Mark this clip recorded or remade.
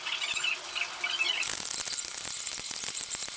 recorded